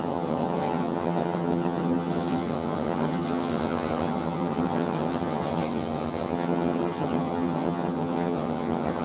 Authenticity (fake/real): fake